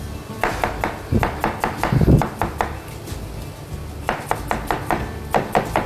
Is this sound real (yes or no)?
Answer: no